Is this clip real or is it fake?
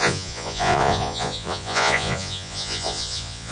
fake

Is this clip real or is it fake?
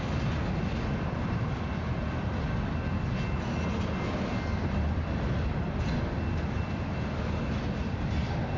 real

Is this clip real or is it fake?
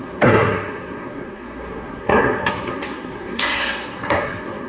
fake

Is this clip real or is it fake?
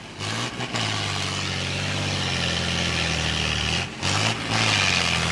real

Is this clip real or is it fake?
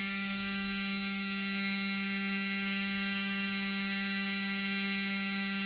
fake